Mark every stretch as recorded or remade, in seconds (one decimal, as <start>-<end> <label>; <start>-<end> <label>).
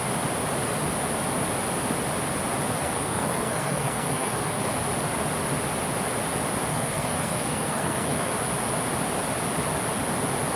0.0-2.8 recorded; 2.8-4.6 remade; 4.6-6.7 recorded; 6.7-8.3 remade; 8.3-10.6 recorded